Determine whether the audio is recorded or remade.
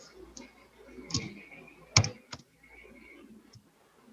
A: recorded